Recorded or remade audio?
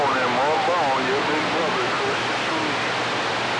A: recorded